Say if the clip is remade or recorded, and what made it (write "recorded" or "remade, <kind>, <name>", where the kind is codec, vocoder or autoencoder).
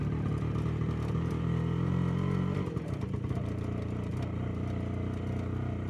recorded